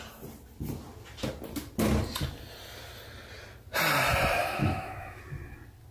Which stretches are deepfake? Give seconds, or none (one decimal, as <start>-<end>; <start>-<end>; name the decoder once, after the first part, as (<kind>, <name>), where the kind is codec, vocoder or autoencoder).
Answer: 4.4-5.2 (autoencoder, DAC-VAE)